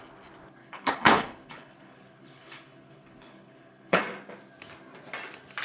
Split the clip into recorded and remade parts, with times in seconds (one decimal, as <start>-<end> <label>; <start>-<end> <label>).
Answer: 0.0-0.6 recorded; 0.6-4.0 remade; 4.0-5.6 recorded